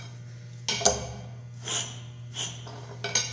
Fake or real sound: real